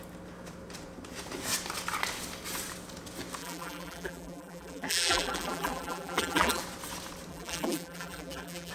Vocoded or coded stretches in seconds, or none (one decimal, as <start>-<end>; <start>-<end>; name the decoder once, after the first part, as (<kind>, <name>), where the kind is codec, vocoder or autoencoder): 3.4-6.6 (vocoder, BigVGAN v2); 7.3-8.7